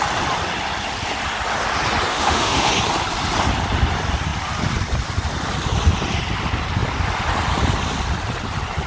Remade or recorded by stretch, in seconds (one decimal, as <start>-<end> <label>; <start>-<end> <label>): 0.0-2.1 recorded; 2.1-2.7 remade; 2.7-8.9 recorded